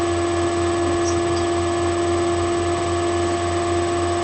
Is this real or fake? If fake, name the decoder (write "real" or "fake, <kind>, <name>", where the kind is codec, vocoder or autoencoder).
real